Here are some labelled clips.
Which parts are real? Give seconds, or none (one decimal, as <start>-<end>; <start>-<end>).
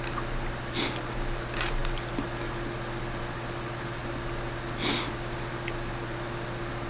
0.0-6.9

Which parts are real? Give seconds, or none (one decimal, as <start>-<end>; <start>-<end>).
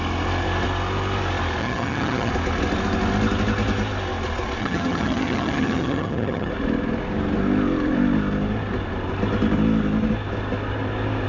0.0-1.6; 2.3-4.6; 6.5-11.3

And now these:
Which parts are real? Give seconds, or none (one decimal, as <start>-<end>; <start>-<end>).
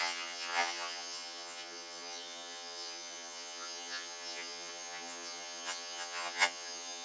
none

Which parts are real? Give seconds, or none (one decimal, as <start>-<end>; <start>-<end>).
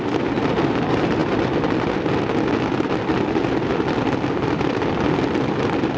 0.0-6.0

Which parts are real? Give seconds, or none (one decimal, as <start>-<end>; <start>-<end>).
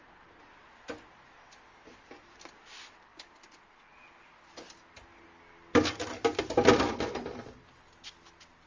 0.0-8.7